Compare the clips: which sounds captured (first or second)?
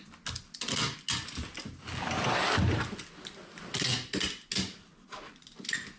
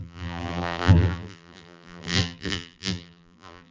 first